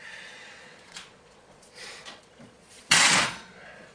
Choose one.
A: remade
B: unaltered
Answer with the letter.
A